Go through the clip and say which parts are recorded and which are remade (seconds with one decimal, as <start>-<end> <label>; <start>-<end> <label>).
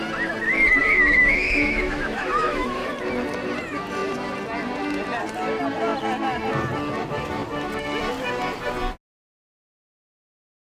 0.0-0.8 recorded; 0.8-2.9 remade; 2.9-10.6 recorded